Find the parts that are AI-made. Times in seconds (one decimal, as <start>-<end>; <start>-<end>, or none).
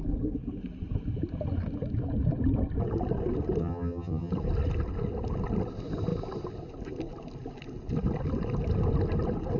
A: 3.6-4.3